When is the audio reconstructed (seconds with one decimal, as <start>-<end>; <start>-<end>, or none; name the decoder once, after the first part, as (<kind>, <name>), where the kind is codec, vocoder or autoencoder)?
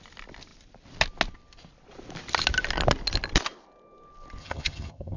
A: 4.4-5.2 (vocoder, HiFi-GAN)